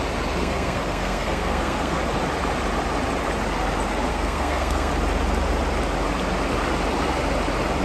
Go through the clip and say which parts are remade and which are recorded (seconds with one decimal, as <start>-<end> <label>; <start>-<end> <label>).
0.0-0.4 recorded; 0.4-2.0 remade; 2.0-4.1 recorded; 4.1-4.9 remade; 4.9-7.8 recorded